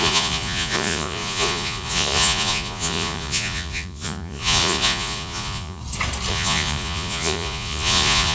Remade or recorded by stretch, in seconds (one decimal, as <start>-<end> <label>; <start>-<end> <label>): 0.0-5.8 remade; 5.8-6.3 recorded; 6.3-8.3 remade